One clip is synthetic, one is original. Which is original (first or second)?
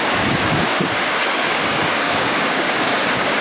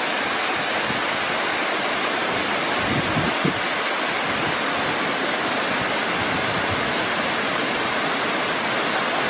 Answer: second